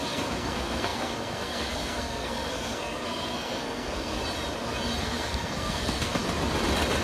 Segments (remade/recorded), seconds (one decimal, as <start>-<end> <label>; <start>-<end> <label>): 0.0-4.2 remade; 4.2-5.0 recorded; 5.0-6.2 remade; 6.2-7.0 recorded